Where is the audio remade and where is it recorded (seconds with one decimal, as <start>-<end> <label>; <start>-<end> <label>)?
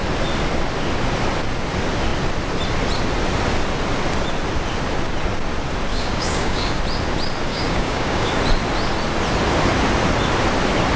0.0-5.9 recorded; 5.9-6.8 remade; 6.8-7.5 recorded; 7.5-8.3 remade; 8.3-11.0 recorded